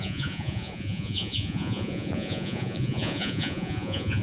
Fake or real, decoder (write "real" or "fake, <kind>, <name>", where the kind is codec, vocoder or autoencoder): fake, vocoder, Vocos